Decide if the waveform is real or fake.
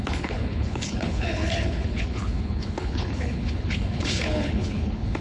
fake